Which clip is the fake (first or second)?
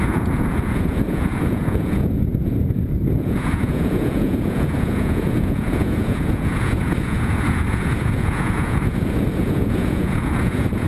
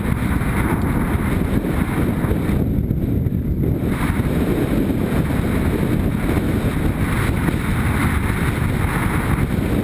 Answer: first